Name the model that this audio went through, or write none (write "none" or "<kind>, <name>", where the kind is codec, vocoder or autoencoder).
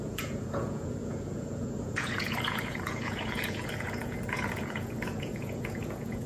vocoder, Vocos